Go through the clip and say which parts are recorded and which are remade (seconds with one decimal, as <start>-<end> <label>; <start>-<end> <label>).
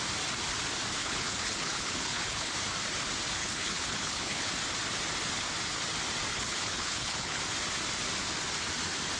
0.0-1.0 recorded; 1.0-2.5 remade; 2.5-3.4 recorded; 3.4-4.5 remade; 4.5-6.3 recorded; 6.3-7.4 remade; 7.4-9.2 recorded